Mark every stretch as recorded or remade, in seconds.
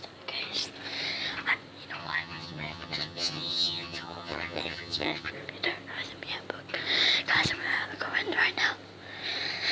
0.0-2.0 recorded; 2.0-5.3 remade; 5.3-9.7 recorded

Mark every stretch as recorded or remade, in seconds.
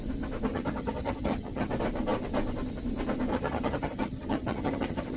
0.0-0.5 recorded; 0.5-1.7 remade; 1.7-3.3 recorded; 3.3-5.2 remade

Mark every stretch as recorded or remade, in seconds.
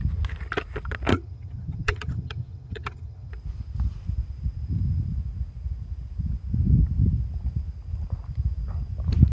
0.0-1.1 recorded; 1.1-3.3 remade; 3.3-9.3 recorded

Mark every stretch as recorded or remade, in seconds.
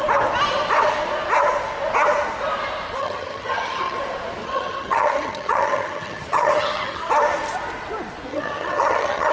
0.0-3.0 recorded; 3.0-4.0 remade; 4.0-4.4 recorded; 4.4-7.1 remade; 7.1-8.3 recorded; 8.3-9.3 remade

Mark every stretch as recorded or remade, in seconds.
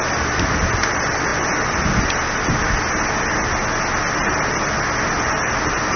0.0-6.0 recorded